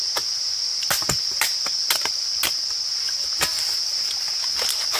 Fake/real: real